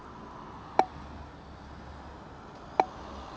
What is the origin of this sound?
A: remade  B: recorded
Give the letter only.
B